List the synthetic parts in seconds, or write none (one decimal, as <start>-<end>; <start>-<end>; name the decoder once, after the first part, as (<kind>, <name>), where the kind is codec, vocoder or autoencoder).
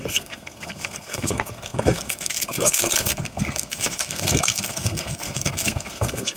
0.0-6.4 (codec, SNAC)